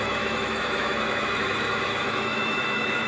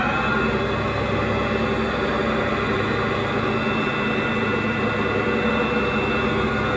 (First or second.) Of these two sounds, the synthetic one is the first